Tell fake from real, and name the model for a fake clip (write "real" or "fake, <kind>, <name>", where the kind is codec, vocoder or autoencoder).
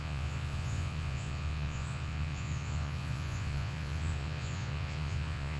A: fake, vocoder, Vocos